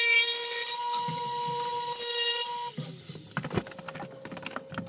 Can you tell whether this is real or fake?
real